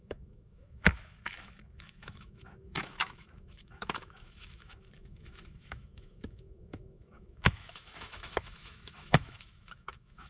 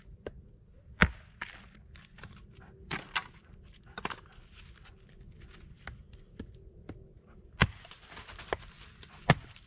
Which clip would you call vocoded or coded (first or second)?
first